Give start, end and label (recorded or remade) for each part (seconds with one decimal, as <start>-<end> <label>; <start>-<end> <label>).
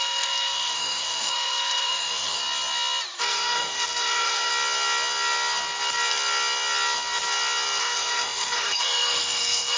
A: 0.0-2.4 remade; 2.4-3.2 recorded; 3.2-4.5 remade; 4.5-7.8 recorded; 7.8-9.8 remade